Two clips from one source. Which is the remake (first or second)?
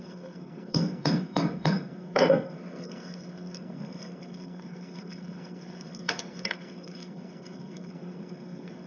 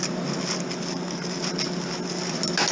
first